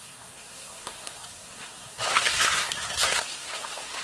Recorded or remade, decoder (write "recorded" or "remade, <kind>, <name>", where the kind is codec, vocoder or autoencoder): remade, codec, SNAC